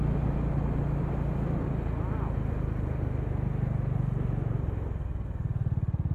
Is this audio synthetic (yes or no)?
no